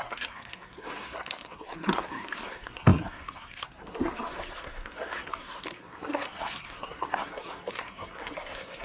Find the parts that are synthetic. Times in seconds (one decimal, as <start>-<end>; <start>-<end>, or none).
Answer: 0.0-8.8